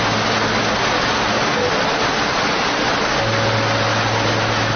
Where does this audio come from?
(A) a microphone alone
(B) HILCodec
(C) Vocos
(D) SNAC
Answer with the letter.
A